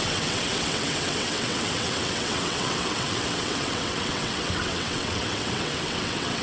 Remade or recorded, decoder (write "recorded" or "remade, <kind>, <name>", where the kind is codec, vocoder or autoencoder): remade, vocoder, WaveNeXt